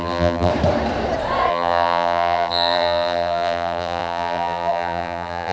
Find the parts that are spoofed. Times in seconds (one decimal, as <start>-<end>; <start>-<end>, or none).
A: 0.0-0.5; 1.5-5.5